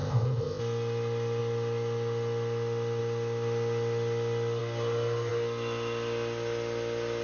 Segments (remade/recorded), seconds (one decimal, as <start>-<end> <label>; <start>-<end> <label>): 0.0-0.6 remade; 0.6-7.2 recorded